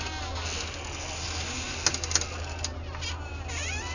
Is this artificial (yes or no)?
no